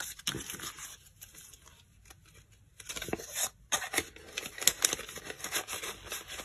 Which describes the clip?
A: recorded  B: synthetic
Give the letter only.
A